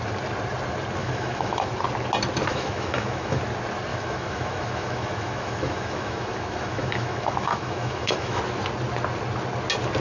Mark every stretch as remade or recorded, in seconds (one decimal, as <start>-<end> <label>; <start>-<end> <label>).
0.0-1.0 recorded; 1.0-1.7 remade; 1.7-2.5 recorded; 2.5-3.4 remade; 3.4-3.9 recorded; 3.9-8.4 remade; 8.4-10.0 recorded